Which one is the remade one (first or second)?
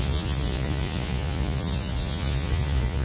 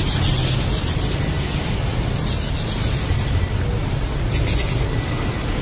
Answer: first